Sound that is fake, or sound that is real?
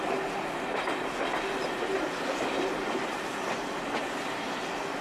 real